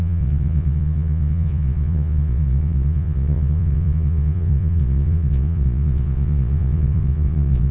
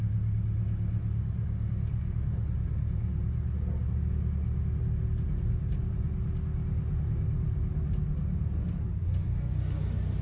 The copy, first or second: first